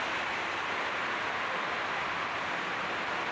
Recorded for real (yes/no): yes